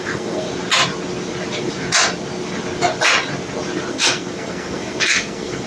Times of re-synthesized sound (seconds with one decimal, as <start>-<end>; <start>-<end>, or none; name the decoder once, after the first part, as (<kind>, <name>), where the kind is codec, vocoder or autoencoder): 0.0-0.5 (codec, SNAC); 3.9-5.7